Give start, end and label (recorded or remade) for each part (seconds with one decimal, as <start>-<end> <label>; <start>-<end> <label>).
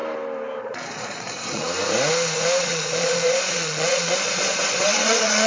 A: 0.0-0.6 recorded; 0.6-1.6 remade; 1.6-2.6 recorded; 2.6-5.5 remade